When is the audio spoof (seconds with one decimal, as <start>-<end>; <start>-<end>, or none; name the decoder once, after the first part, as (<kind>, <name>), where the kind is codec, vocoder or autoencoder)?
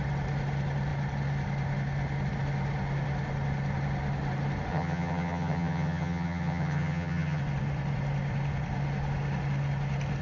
4.7-7.4 (vocoder, HiFi-GAN)